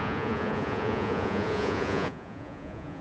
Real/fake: fake